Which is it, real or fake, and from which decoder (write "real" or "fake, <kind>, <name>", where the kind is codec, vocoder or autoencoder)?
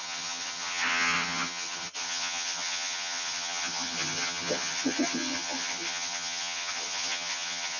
fake, vocoder, HiFi-GAN